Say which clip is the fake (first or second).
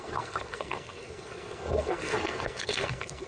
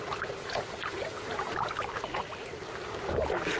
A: first